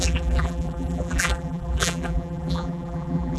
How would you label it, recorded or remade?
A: remade